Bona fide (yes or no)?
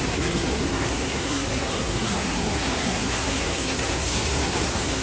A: no